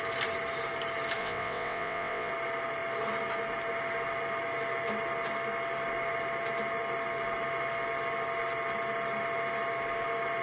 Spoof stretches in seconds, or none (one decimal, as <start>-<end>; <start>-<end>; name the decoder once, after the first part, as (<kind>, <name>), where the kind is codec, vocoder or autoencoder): 1.2-2.3 (vocoder, WaveNeXt)